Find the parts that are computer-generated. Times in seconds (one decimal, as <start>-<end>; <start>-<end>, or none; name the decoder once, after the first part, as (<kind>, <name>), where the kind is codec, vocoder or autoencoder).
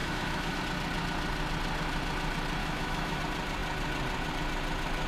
0.0-0.6 (autoencoder, DAC-VAE); 2.6-3.2